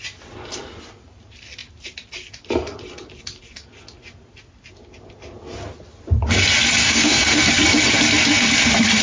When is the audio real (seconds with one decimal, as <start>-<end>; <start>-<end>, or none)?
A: 0.0-6.8; 7.5-9.0